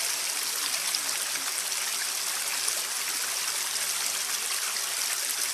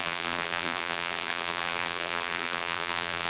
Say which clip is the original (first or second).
first